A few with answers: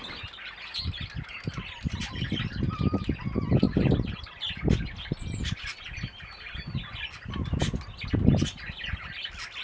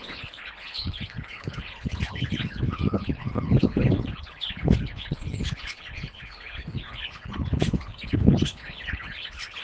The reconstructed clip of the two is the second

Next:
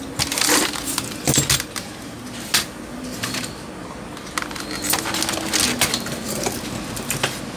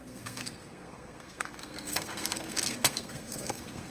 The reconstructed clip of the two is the second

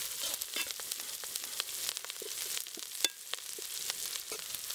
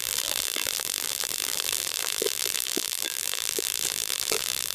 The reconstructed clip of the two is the second